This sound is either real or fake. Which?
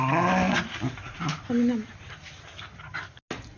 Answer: real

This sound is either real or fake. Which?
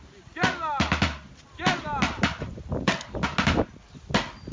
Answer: real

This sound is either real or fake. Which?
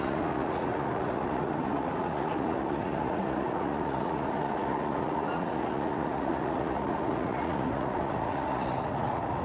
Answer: fake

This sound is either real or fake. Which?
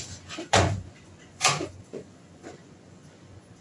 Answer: fake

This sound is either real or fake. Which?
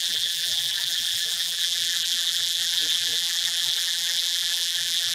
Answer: fake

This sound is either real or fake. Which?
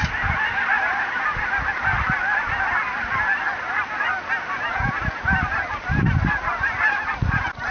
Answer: real